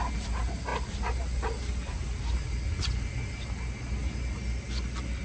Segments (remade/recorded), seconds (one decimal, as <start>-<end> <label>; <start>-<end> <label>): 0.0-5.2 recorded